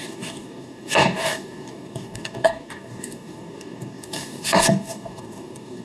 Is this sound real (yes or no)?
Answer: no